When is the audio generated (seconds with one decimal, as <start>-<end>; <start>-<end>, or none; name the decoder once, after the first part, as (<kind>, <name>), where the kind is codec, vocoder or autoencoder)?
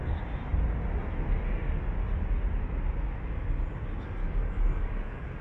4.2-5.4 (codec, DAC)